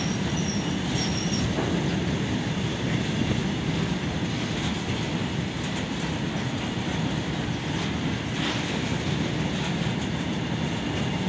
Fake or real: real